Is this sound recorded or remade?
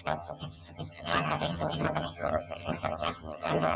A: remade